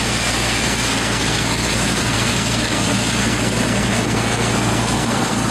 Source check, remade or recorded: remade